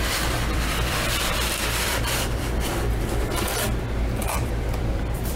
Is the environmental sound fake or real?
fake